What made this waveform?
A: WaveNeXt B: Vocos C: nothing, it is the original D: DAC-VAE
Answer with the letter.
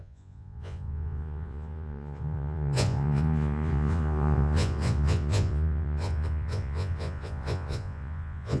B